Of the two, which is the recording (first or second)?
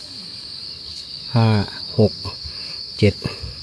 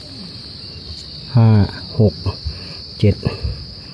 second